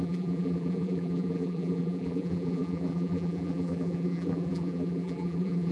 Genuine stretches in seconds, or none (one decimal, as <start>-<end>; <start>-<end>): none

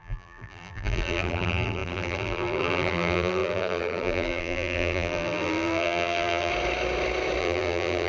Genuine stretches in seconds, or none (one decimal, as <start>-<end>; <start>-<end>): 6.5-7.4

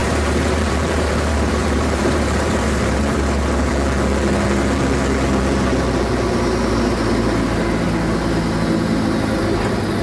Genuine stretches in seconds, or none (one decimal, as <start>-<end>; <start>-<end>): 3.7-10.0

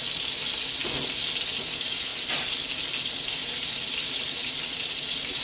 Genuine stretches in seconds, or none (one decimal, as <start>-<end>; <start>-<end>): 0.8-1.5; 2.1-3.1

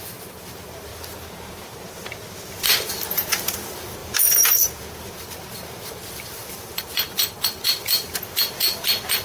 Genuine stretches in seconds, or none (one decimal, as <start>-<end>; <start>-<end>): 0.9-2.9